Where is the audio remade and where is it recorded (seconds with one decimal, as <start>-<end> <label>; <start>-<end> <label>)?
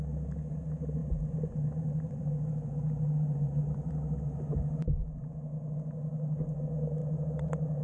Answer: 0.0-1.0 recorded; 1.0-5.3 remade; 5.3-7.0 recorded; 7.0-7.8 remade